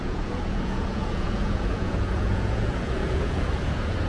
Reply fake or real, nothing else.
fake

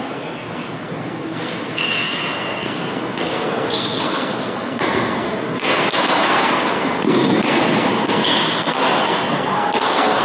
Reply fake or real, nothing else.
fake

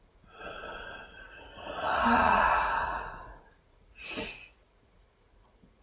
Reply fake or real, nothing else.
fake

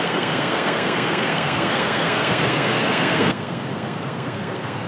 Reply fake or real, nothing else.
fake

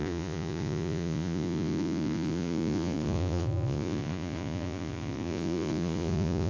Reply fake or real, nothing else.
fake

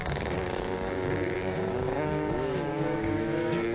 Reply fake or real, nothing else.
fake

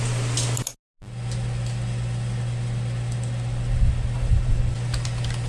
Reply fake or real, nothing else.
real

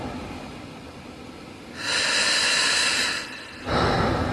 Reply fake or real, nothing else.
real